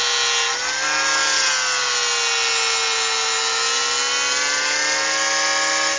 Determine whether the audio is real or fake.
real